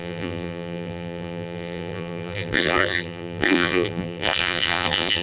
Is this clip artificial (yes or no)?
yes